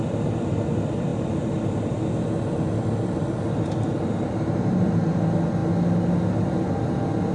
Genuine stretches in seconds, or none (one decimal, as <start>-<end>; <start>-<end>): 0.0-7.3

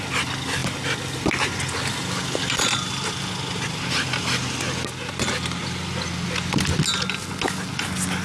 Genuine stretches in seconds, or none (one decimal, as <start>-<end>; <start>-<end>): 0.0-8.2

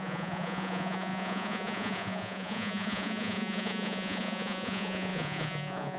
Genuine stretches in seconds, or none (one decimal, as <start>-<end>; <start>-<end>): none

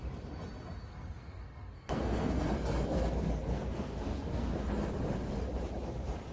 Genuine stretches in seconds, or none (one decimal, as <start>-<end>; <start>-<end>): 0.0-0.9; 4.6-6.3